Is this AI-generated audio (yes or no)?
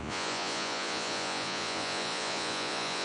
yes